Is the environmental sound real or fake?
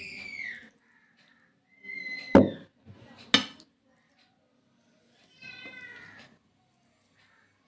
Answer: real